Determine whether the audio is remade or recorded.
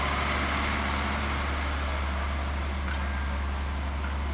recorded